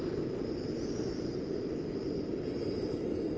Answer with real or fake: real